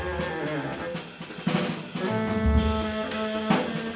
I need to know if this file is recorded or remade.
recorded